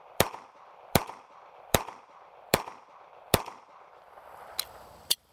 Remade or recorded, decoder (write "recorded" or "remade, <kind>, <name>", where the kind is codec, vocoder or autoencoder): remade, vocoder, BigVGAN v2